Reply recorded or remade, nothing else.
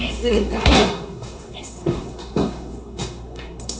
remade